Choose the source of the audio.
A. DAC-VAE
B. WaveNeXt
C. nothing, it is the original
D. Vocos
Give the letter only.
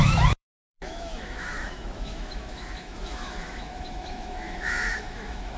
A